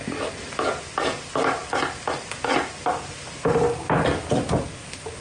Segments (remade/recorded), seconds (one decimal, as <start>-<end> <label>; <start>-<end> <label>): 0.0-5.2 recorded

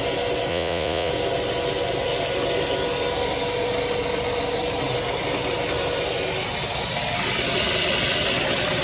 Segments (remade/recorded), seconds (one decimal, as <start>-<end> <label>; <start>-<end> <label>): 0.0-0.5 recorded; 0.5-1.1 remade; 1.1-8.8 recorded